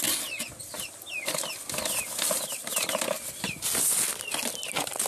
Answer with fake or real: real